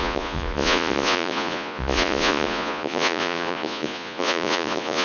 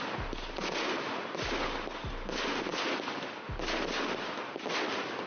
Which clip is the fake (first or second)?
first